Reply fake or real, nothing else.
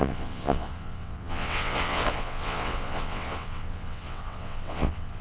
fake